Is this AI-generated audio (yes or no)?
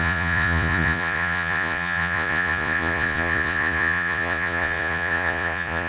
yes